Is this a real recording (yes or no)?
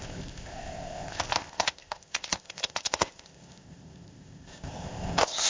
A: no